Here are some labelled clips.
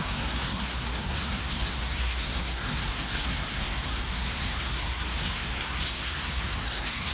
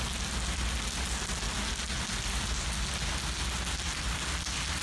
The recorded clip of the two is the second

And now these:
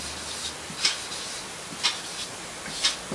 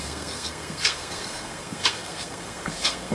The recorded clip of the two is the first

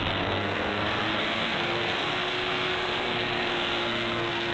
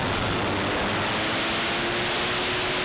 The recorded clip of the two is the second